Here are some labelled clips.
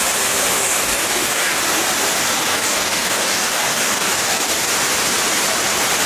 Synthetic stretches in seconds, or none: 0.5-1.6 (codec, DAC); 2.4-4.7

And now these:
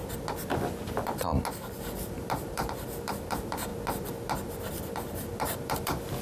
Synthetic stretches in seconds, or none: 0.5-1.3 (vocoder, BigVGAN v2); 1.8-3.7; 4.5-6.2

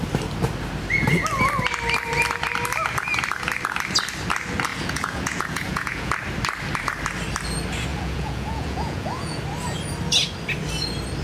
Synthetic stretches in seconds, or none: 4.7-6.1 (vocoder, Vocos); 7.9-9.4

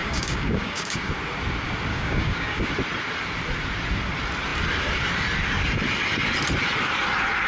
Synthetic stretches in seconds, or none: 0.0-1.1 (codec, DAC); 1.9-2.7

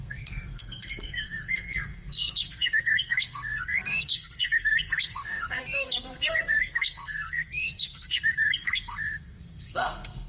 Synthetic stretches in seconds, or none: 0.0-10.3 (codec, SNAC)

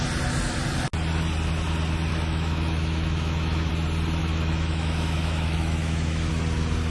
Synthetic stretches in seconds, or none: 2.1-3.7 (autoencoder, DAC-VAE); 4.2-6.3

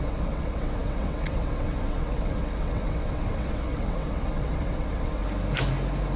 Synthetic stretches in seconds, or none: 0.0-5.2 (vocoder, WaveNeXt)

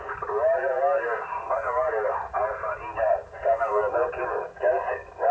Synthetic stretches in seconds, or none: none